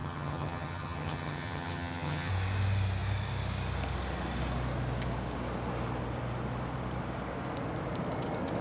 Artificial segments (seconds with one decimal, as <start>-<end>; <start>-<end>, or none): 0.0-2.3